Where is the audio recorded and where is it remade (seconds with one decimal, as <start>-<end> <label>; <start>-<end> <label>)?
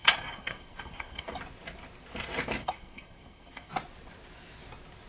0.0-1.4 remade; 1.4-2.6 recorded; 2.6-3.7 remade; 3.7-5.1 recorded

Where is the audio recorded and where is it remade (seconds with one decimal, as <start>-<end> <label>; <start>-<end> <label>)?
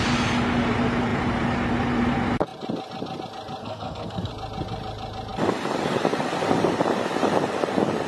0.0-3.6 recorded; 3.6-4.3 remade; 4.3-8.1 recorded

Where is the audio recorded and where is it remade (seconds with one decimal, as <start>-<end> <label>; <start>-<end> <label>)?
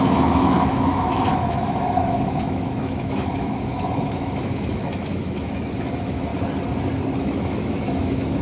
0.0-6.3 remade; 6.3-7.2 recorded; 7.2-8.4 remade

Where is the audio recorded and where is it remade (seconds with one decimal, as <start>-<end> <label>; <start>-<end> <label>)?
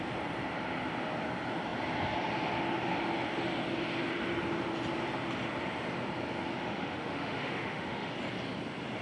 0.0-6.6 recorded; 6.6-8.1 remade; 8.1-9.0 recorded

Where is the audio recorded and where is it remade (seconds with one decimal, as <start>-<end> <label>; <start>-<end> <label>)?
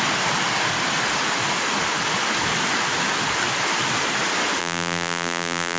0.0-4.6 recorded; 4.6-5.8 remade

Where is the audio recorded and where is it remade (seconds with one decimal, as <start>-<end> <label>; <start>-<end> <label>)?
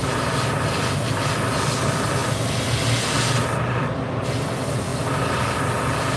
0.0-6.2 recorded